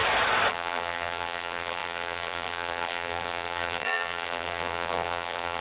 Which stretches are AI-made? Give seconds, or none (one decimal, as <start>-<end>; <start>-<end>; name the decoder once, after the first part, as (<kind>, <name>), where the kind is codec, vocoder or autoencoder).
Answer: 0.5-5.6 (vocoder, BigVGAN v2)

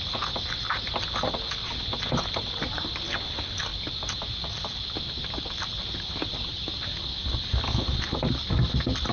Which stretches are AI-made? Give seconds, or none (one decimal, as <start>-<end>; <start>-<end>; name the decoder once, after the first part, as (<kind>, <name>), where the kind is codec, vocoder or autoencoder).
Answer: 3.7-4.8 (vocoder, BigVGAN v2)

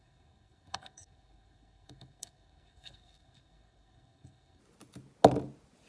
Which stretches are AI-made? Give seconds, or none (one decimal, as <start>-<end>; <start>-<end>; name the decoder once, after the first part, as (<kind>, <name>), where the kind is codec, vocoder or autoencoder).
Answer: 0.0-4.6 (codec, SNAC)

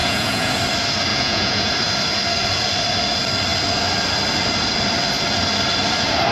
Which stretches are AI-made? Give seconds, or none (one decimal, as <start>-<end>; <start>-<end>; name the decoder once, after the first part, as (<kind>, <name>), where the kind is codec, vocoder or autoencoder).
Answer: 0.0-0.5 (vocoder, Vocos); 1.1-1.7

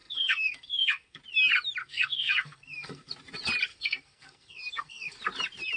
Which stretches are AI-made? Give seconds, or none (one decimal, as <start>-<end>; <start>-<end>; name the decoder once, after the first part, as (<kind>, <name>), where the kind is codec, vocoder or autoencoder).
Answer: 0.0-1.2 (codec, SNAC); 1.8-3.1; 3.7-5.2

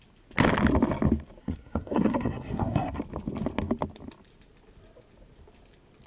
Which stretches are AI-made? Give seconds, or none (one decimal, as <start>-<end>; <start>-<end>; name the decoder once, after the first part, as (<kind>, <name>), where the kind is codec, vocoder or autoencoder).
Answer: 1.4-3.0 (codec, SNAC)